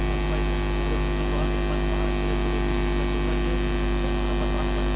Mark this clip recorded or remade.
recorded